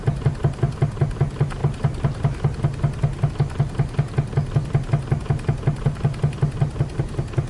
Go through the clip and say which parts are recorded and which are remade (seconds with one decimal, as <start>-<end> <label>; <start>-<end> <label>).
0.0-7.5 recorded